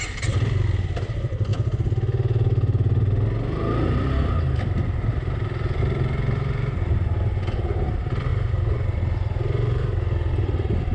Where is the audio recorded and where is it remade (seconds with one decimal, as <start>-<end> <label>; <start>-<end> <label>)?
0.0-10.9 recorded